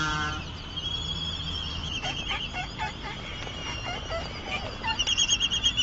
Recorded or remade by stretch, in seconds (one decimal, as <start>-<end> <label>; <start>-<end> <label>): 0.0-1.7 recorded; 1.7-2.2 remade; 2.2-5.8 recorded